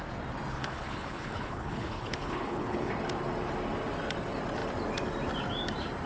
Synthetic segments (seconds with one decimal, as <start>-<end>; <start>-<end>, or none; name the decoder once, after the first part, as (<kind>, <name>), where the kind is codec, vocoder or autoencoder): 0.5-2.9 (codec, HILCodec)